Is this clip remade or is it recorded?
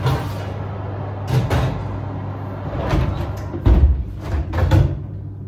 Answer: recorded